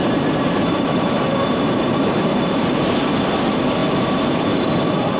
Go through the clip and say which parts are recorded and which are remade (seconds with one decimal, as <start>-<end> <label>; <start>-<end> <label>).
0.0-3.1 remade; 3.1-5.2 recorded

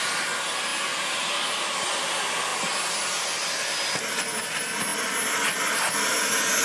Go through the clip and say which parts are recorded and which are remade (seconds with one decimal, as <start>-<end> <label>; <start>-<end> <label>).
0.0-6.6 recorded